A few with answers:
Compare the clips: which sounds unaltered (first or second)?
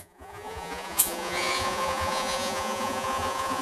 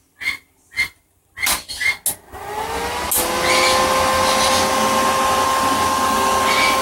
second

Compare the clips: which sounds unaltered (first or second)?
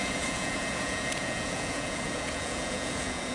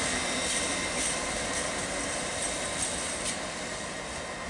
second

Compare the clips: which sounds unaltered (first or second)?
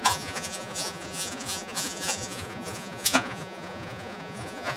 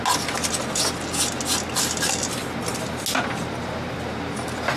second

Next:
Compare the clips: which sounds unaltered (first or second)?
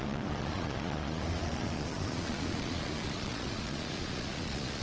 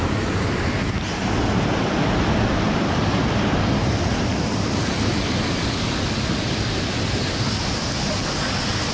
second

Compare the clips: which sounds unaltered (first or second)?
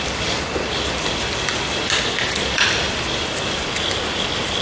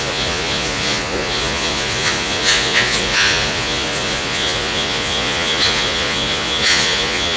first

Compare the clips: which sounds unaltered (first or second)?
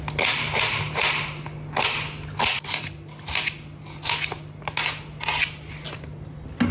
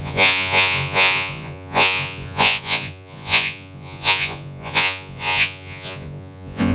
first